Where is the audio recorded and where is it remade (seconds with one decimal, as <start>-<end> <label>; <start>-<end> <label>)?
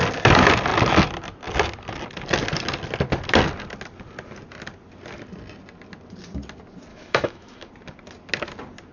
0.0-6.9 recorded; 6.9-7.7 remade; 7.7-8.9 recorded